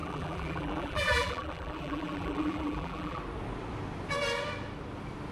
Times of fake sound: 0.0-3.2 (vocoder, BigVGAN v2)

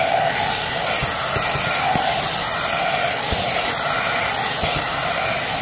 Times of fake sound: none

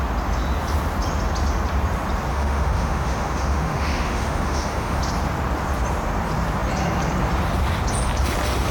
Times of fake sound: 2.3-5.0 (autoencoder, DAC-VAE)